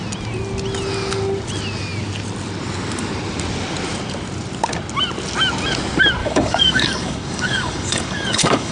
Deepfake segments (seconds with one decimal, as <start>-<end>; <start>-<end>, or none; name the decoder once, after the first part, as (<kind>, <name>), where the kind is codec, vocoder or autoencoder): 6.2-8.7 (codec, DAC)